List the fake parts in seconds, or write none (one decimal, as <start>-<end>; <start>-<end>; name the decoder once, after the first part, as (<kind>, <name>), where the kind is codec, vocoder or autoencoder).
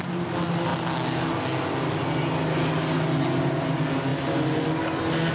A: none